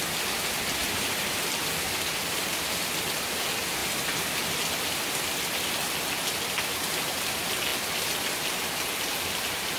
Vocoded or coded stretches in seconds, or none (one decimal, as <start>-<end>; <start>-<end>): 0.8-1.8